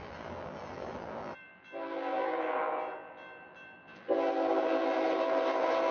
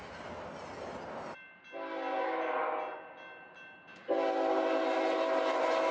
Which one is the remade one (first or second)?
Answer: first